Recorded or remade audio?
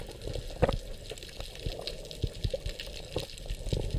recorded